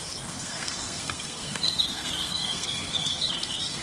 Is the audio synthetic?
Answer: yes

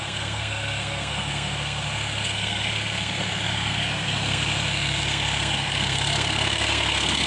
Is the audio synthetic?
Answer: yes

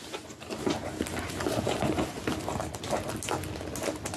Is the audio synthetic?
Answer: no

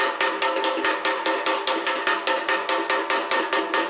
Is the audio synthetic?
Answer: no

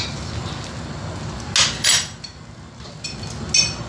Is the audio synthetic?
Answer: no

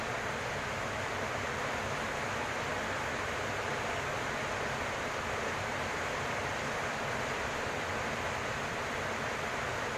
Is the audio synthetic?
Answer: no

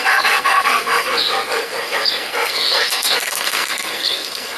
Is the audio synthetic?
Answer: yes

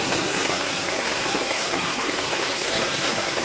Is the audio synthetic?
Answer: yes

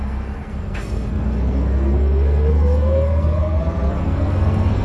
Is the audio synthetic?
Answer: yes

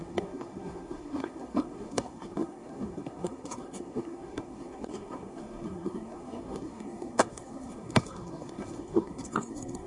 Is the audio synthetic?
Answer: yes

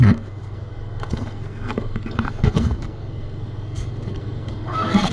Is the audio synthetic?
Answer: yes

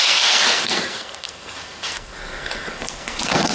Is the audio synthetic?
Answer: yes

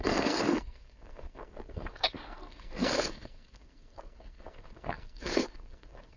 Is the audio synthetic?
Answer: yes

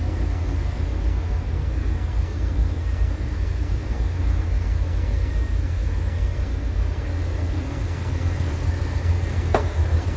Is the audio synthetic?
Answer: yes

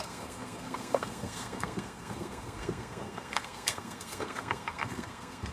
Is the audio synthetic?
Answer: yes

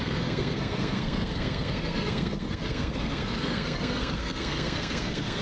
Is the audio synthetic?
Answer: yes